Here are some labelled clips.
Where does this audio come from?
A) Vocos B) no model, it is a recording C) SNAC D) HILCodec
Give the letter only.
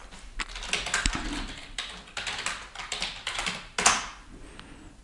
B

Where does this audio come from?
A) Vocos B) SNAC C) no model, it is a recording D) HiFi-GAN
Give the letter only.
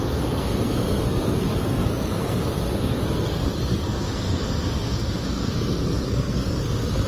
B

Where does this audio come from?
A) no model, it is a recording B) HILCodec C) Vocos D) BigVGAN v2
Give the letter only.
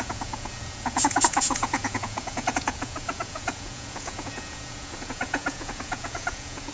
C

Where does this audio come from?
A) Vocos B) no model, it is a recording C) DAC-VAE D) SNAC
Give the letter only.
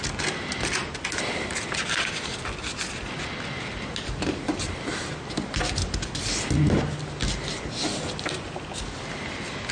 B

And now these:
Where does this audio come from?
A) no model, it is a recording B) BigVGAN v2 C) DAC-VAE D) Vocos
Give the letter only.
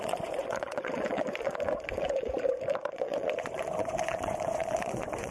D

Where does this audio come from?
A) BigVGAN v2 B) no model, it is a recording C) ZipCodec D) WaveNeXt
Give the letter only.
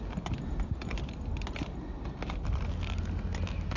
B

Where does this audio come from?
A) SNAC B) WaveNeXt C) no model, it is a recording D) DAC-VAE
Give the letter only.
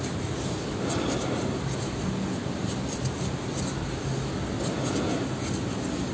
C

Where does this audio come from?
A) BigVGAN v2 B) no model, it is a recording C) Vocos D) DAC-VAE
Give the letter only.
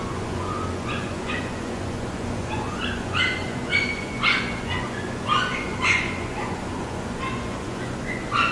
C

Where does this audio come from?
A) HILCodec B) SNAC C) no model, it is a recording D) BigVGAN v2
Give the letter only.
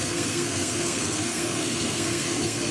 B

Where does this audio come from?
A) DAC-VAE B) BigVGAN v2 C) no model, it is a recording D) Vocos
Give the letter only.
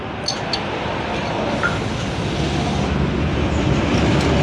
C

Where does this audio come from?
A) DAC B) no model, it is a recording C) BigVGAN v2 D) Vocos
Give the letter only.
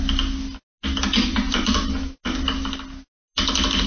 B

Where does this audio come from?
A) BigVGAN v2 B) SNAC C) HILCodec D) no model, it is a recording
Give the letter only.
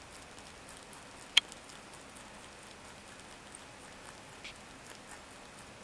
D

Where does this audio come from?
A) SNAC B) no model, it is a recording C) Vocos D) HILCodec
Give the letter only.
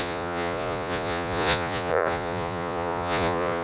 C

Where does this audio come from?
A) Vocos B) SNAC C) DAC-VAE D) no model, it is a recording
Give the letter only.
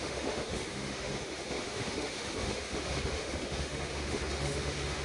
C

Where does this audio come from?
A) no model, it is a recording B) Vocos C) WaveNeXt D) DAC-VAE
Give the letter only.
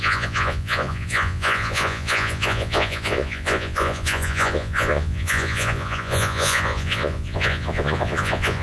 B